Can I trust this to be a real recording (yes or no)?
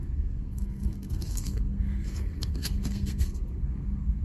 no